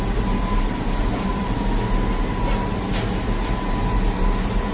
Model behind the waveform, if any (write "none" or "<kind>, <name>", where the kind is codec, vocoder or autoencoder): none